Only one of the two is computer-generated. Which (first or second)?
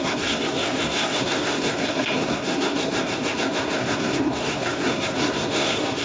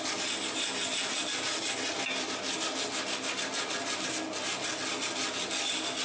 first